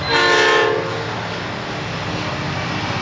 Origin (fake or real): real